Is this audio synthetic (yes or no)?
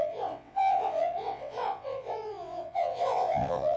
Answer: yes